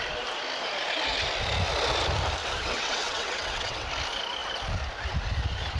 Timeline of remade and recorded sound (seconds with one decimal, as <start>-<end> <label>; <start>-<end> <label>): 0.0-2.4 recorded; 2.4-3.9 remade; 3.9-5.8 recorded